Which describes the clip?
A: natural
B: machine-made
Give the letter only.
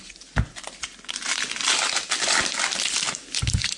A